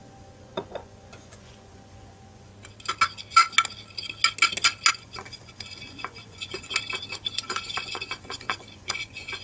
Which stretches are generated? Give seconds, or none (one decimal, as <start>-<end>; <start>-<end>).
0.0-2.5; 4.9-6.7; 7.3-9.4